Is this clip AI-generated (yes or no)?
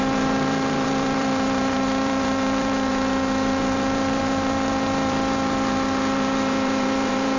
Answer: yes